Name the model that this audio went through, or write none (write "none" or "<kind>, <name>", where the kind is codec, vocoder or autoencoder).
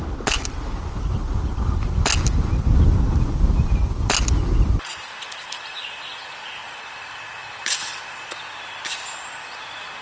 none